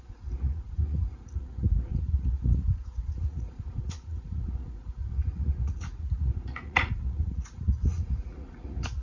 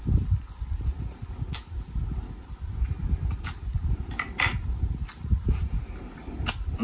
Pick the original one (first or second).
second